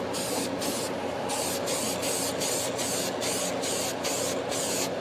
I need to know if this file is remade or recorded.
recorded